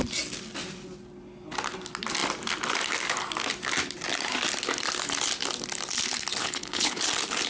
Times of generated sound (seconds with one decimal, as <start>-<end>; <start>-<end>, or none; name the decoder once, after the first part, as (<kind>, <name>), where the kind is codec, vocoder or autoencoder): 6.4-7.0 (codec, HILCodec)

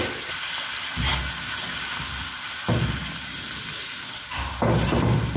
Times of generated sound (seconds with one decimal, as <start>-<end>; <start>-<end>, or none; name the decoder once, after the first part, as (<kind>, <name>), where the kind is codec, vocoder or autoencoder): none

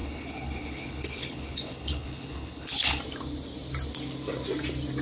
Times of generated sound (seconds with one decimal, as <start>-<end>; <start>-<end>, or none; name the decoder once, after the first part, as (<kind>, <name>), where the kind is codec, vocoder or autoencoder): 0.0-3.0 (codec, HILCodec)

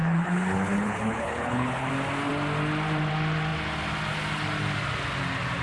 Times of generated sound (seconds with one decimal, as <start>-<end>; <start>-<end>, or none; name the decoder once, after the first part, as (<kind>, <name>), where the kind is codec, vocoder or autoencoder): 0.0-1.9 (codec, HILCodec)

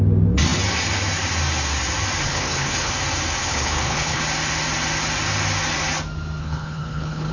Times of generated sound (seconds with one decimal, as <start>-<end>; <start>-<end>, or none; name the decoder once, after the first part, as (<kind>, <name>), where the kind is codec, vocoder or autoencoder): 2.2-2.9 (codec, HILCodec); 3.4-4.2; 6.4-7.3

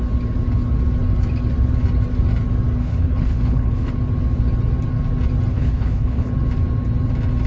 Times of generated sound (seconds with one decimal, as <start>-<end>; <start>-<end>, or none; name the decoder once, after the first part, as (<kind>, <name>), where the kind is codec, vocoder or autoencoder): 2.8-3.9 (codec, HILCodec); 5.5-6.3